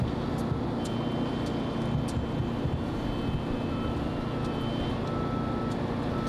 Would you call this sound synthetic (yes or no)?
no